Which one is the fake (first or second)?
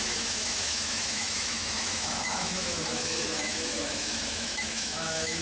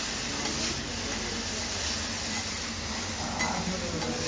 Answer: first